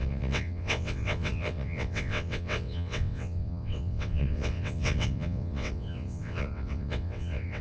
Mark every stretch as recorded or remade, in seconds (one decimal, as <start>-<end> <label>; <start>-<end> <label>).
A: 0.0-7.6 remade